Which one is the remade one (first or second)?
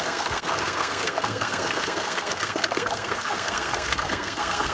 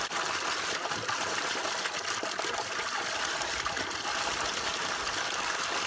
first